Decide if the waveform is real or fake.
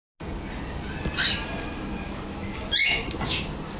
real